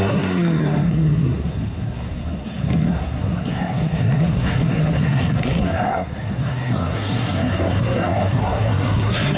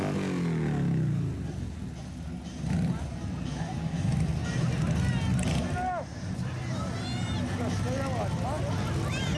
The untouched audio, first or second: second